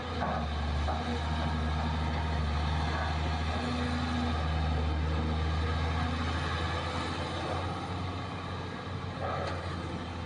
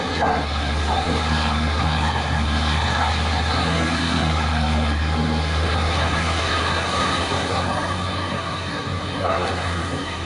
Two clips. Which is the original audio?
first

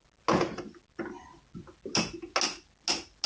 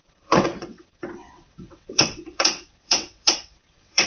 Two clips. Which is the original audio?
first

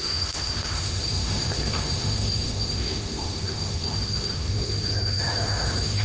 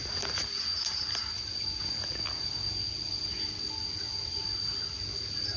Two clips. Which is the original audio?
second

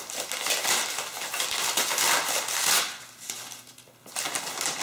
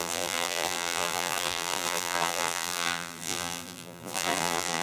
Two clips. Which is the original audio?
first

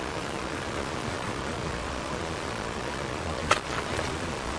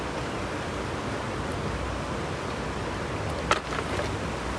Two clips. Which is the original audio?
second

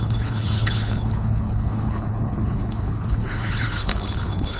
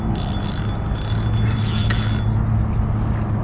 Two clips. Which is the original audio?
second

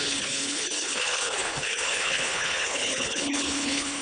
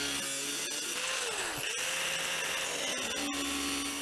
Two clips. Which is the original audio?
second